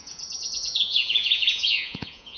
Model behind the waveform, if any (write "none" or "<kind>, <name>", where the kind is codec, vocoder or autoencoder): vocoder, Vocos